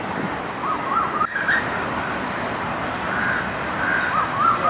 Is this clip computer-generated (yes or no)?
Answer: no